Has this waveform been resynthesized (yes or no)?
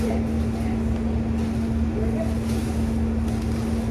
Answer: no